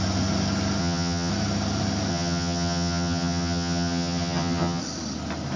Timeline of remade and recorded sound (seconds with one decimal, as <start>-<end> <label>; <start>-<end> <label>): 0.0-0.8 recorded; 0.8-1.3 remade; 1.3-2.1 recorded; 2.1-4.8 remade; 4.8-5.6 recorded